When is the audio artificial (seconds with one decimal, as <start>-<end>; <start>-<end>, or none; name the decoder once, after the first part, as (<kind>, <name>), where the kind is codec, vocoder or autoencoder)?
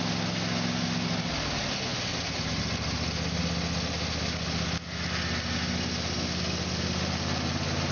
none